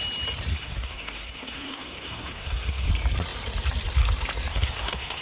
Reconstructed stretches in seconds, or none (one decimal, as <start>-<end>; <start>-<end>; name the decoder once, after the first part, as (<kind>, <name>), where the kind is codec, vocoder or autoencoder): 0.5-2.9 (codec, SNAC); 4.5-5.2